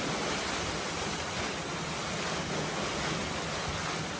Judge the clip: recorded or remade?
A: recorded